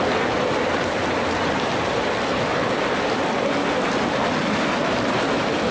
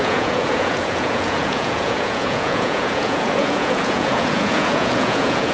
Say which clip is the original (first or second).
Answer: first